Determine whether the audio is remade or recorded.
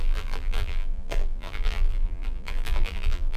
remade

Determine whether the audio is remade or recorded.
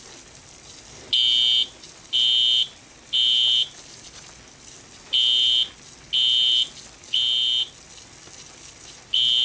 recorded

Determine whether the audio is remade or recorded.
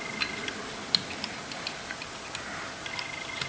recorded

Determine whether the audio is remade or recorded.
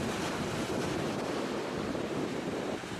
remade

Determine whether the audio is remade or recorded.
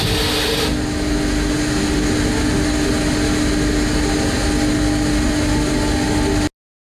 recorded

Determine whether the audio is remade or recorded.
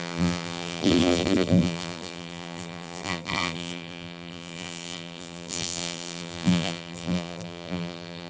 remade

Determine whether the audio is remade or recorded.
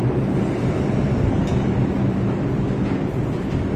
remade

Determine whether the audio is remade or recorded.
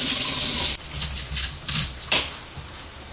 recorded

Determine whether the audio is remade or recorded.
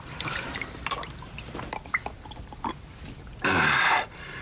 remade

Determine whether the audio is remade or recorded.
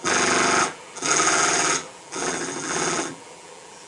remade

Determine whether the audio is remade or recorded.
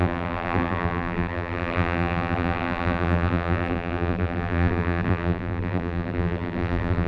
remade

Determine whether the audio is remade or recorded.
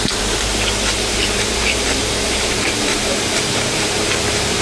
remade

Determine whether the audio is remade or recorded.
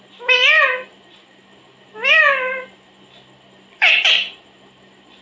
remade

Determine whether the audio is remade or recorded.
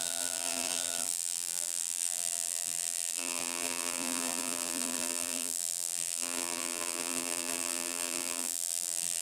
remade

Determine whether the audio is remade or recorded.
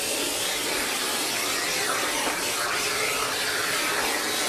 recorded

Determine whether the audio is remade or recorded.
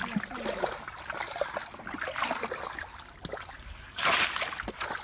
recorded